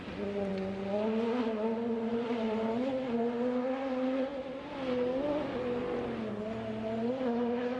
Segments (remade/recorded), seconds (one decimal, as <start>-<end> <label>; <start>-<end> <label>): 0.0-2.1 recorded; 2.1-2.9 remade; 2.9-7.8 recorded